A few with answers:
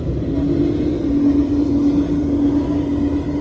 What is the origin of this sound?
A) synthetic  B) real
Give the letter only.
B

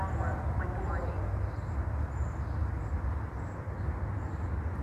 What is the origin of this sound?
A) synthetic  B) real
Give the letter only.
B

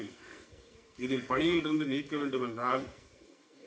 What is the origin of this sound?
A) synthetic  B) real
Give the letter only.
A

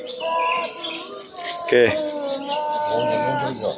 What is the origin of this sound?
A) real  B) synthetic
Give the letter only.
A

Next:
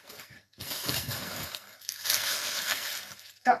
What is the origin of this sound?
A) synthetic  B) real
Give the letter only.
A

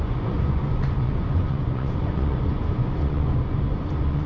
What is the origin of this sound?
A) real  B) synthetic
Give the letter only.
B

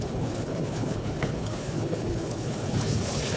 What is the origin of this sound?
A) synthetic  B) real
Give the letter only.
A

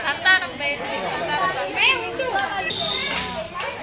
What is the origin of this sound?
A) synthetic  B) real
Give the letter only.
B